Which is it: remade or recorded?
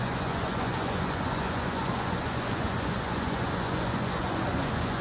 remade